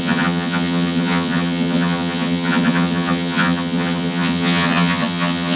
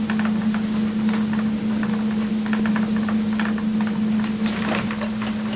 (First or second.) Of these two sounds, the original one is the second